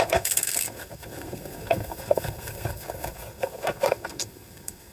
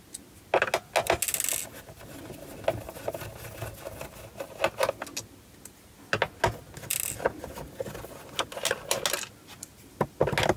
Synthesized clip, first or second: first